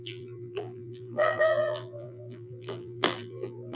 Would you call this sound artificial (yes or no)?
yes